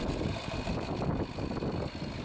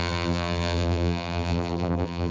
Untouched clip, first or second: first